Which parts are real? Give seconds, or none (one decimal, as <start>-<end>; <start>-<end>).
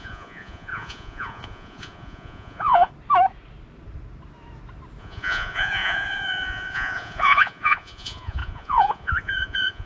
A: 2.9-5.0